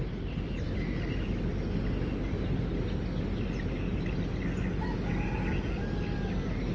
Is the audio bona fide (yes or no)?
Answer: yes